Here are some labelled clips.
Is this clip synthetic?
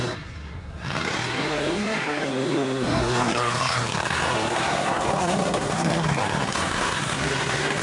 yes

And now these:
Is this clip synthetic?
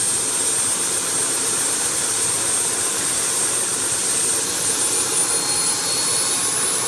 no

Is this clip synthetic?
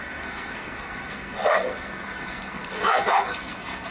yes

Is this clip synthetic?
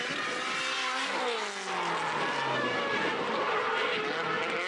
no